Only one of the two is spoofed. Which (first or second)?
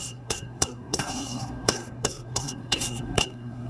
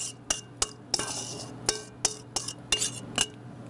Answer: first